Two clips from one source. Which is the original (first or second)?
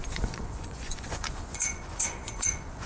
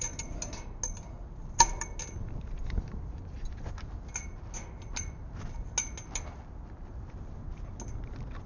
second